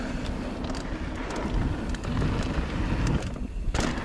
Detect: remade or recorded recorded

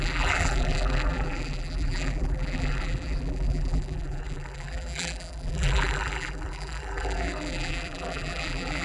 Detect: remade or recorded remade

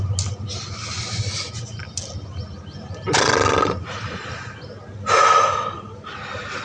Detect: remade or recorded recorded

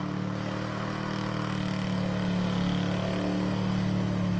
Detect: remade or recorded recorded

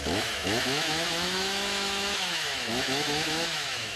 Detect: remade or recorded remade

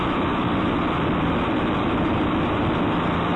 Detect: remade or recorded remade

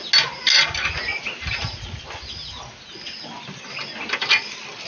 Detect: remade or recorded recorded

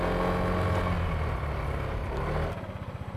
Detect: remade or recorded recorded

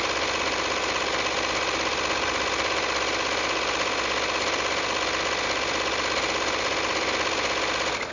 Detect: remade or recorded recorded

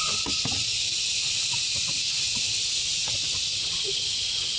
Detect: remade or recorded recorded